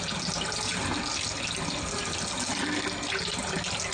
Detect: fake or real real